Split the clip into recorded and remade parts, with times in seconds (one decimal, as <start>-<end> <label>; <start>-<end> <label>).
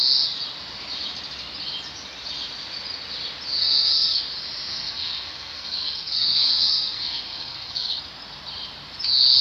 0.0-3.6 recorded; 3.6-4.2 remade; 4.2-4.7 recorded; 4.7-8.0 remade; 8.0-9.4 recorded